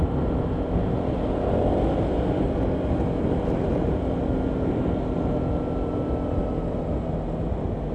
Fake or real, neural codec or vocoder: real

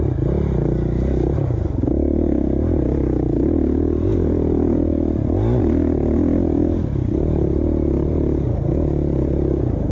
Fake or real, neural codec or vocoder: real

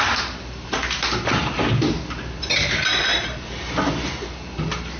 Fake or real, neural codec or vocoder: real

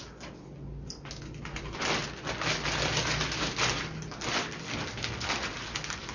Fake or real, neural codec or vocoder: real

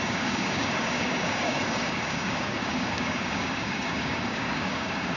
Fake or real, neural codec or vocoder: fake, codec, DAC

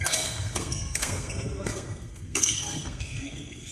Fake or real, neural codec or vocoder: fake, codec, SNAC